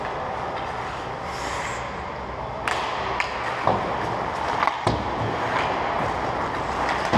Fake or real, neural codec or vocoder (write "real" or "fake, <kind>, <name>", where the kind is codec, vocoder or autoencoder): real